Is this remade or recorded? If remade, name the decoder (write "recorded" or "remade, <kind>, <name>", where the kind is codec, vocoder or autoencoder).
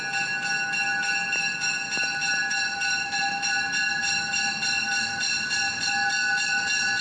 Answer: recorded